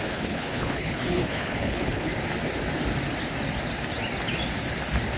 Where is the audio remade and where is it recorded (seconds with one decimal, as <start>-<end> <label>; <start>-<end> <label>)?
0.0-2.1 remade; 2.1-5.2 recorded